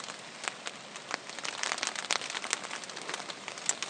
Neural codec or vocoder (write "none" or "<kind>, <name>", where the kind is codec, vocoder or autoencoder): none